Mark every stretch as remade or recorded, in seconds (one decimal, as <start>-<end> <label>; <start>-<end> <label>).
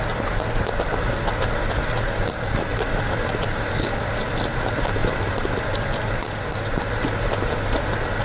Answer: 0.0-8.2 recorded